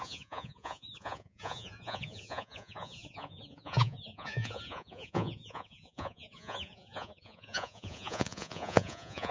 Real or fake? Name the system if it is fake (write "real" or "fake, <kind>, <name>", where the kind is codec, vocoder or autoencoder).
fake, vocoder, Vocos